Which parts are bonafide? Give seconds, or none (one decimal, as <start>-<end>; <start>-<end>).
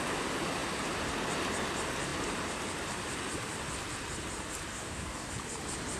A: 0.0-4.7; 5.3-6.0